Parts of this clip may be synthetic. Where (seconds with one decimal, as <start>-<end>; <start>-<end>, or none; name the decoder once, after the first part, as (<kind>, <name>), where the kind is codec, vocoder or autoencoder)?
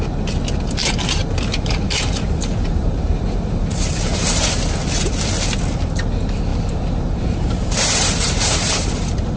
0.8-4.5 (vocoder, BigVGAN v2); 6.5-8.9